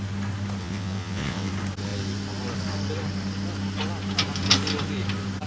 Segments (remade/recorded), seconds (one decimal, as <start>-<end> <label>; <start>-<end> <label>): 0.0-0.6 recorded; 0.6-1.5 remade; 1.5-5.5 recorded